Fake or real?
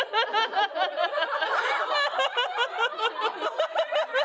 real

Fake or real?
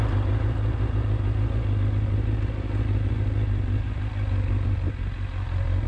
real